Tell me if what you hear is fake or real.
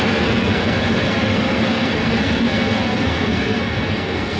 fake